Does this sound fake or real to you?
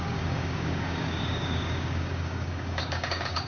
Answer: fake